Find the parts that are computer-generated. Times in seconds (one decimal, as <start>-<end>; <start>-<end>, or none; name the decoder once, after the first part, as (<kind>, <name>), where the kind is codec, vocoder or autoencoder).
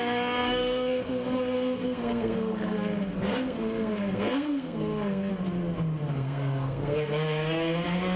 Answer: 0.0-5.3 (codec, SNAC); 6.1-8.2